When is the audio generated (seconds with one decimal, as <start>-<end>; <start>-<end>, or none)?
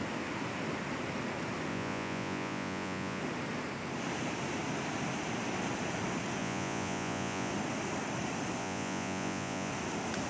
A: 1.7-3.2; 6.4-7.5; 8.6-9.7